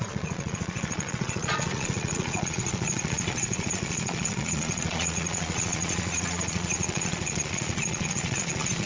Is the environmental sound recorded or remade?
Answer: remade